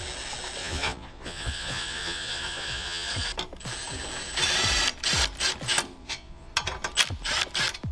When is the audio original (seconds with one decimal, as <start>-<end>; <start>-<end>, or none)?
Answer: 0.0-0.6; 3.1-6.0; 6.5-7.9